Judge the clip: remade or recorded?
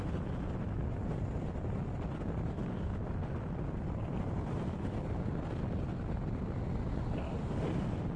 recorded